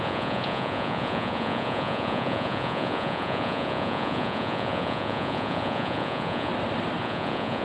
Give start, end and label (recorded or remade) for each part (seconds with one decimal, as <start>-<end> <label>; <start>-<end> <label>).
0.0-6.5 remade; 6.5-7.0 recorded; 7.0-7.6 remade